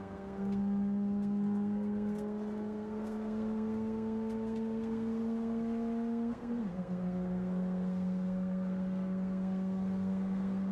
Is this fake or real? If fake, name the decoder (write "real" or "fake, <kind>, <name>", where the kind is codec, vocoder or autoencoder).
fake, codec, SNAC